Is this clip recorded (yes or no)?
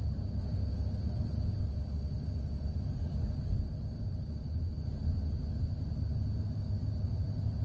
yes